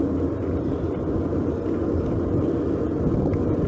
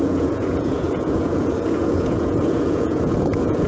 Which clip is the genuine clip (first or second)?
first